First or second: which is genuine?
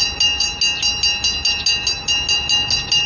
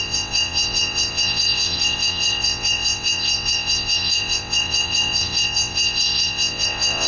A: first